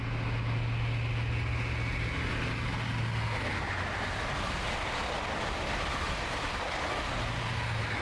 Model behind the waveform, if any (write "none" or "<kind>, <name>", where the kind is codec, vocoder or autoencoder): none